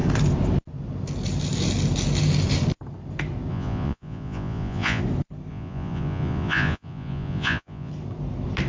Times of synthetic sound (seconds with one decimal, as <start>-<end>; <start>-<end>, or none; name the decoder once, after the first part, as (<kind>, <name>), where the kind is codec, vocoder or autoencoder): 3.5-5.0 (vocoder, Vocos); 5.5-7.9